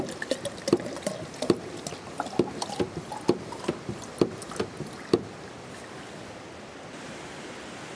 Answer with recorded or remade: recorded